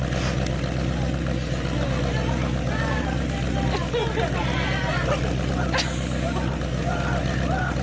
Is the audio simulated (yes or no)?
no